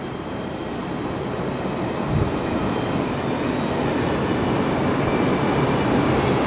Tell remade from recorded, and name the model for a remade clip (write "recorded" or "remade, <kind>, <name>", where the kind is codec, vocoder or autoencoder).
recorded